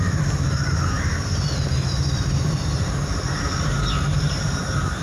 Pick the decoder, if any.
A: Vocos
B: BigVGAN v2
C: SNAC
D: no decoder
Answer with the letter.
B